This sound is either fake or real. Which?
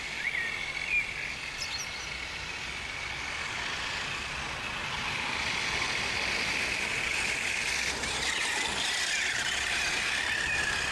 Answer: real